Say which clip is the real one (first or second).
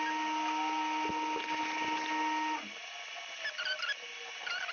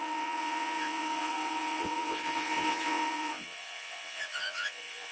first